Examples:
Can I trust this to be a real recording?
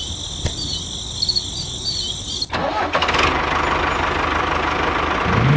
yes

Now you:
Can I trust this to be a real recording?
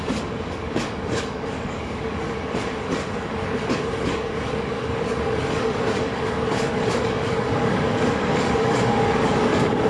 no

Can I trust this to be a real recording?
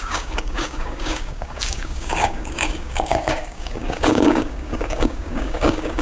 no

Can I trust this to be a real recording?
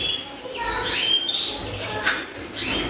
yes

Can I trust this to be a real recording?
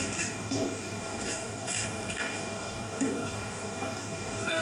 no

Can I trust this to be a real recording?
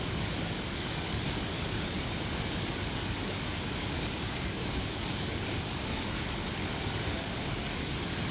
no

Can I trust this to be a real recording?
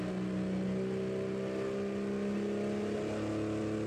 yes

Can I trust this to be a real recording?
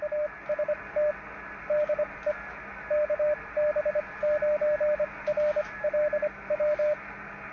yes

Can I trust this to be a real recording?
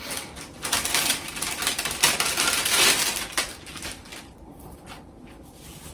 yes